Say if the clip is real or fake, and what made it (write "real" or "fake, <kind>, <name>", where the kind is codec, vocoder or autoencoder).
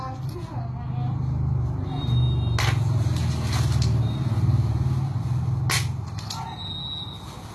real